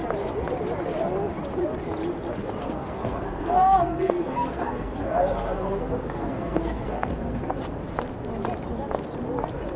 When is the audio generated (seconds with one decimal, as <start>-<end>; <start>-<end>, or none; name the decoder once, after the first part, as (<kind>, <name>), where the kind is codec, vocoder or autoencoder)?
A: 2.6-7.6 (codec, SNAC)